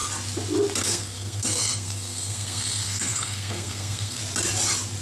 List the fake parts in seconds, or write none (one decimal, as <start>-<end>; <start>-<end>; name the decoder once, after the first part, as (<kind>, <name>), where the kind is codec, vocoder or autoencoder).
0.8-4.2 (codec, SNAC)